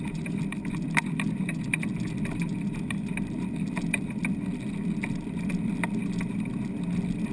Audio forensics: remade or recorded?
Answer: recorded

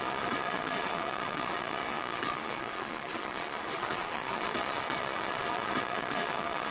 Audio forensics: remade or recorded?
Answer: remade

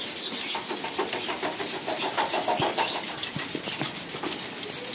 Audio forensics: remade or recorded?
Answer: recorded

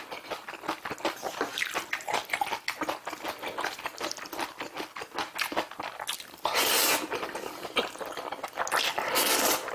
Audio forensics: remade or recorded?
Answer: recorded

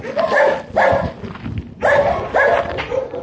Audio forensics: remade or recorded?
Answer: recorded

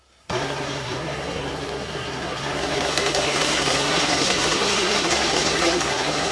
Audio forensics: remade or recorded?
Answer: remade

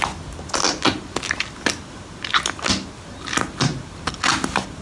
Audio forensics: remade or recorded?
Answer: recorded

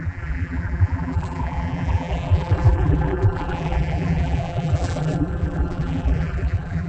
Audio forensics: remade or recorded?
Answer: remade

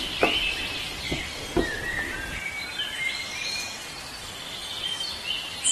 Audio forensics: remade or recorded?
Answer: recorded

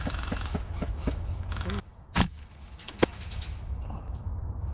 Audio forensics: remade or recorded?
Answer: remade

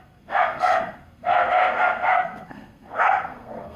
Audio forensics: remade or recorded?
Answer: remade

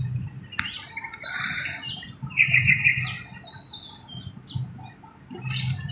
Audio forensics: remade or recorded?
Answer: recorded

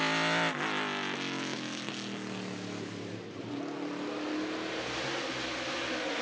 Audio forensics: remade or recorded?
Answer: recorded